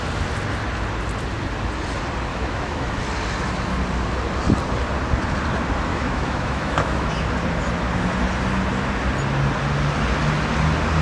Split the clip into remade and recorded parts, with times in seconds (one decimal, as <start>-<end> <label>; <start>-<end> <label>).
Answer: 0.0-2.3 recorded; 2.3-3.0 remade; 3.0-5.9 recorded; 5.9-7.1 remade; 7.1-11.0 recorded